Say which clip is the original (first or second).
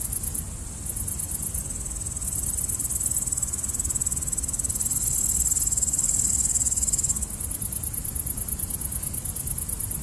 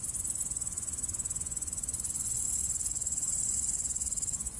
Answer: first